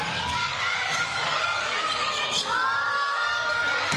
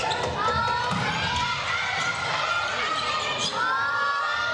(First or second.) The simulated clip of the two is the first